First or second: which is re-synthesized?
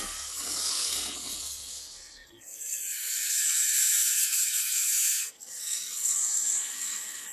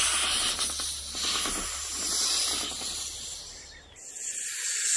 first